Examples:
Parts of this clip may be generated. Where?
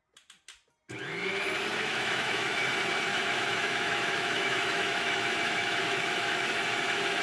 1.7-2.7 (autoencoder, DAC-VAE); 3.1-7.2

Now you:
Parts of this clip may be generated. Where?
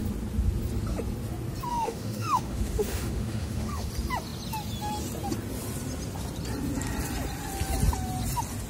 1.7-3.9 (autoencoder, DAC-VAE)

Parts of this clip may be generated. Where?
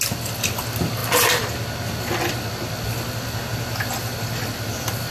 none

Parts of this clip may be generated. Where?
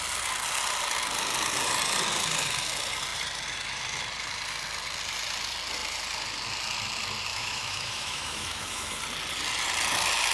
7.3-9.0 (autoencoder, DAC-VAE)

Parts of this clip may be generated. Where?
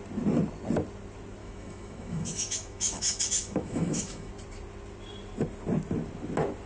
1.4-4.3 (autoencoder, DAC-VAE)